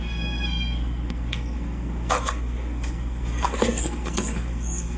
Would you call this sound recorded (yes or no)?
no